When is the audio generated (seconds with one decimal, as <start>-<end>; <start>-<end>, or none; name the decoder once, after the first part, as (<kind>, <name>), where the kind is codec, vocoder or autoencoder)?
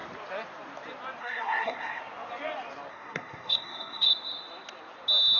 1.2-2.0 (codec, SNAC); 2.9-4.1